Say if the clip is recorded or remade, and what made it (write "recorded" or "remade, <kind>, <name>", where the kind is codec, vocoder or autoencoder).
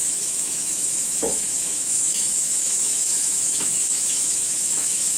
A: remade, autoencoder, DAC-VAE